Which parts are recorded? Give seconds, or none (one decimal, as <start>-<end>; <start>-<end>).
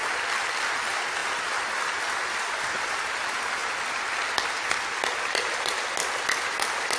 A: 0.0-7.0